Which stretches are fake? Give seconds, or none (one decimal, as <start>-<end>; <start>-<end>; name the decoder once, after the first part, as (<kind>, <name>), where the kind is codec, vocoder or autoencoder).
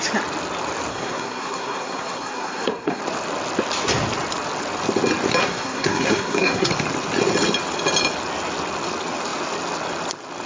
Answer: 0.9-3.0 (codec, SNAC); 5.4-6.7